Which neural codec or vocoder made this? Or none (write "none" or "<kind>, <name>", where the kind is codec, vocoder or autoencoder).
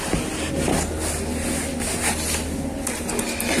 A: none